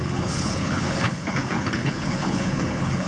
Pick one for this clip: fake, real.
fake